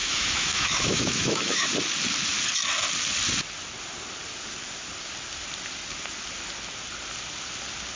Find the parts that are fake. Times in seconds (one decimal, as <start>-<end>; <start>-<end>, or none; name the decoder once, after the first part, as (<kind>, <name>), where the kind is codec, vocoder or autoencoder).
0.0-1.7 (autoencoder, DAC-VAE)